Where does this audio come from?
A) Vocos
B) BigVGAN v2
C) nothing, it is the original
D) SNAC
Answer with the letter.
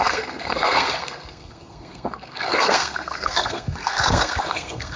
D